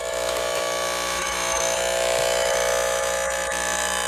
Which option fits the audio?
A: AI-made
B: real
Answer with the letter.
A